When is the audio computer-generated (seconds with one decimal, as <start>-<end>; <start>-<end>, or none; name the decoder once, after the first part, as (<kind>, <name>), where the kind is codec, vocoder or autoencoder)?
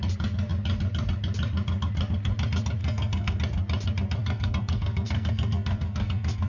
2.8-3.4 (codec, SNAC); 4.2-6.5